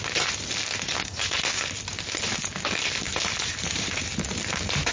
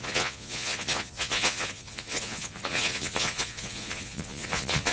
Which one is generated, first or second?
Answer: second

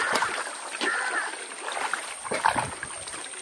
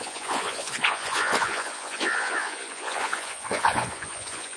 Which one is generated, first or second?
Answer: second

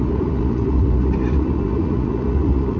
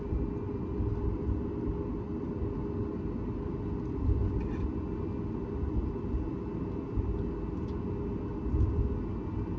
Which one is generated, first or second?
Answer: first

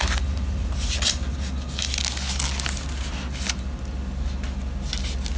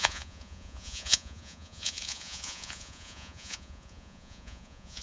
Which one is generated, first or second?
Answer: second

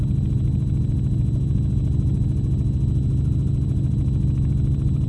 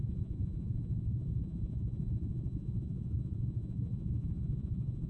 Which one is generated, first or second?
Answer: second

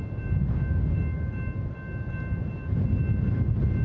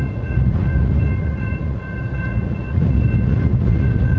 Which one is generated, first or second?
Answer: second